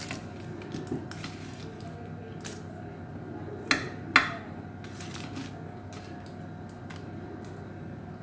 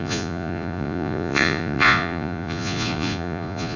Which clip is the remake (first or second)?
second